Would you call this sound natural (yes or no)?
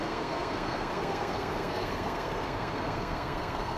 no